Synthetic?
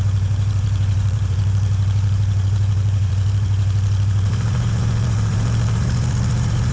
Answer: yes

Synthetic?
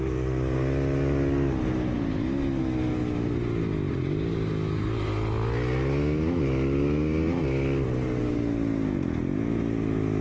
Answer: no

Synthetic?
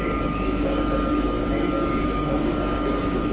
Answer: yes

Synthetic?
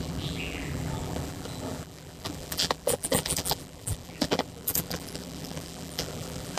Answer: yes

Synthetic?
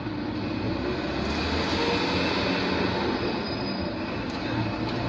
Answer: no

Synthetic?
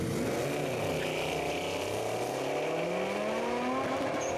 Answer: no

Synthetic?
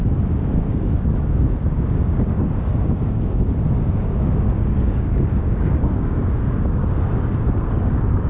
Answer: yes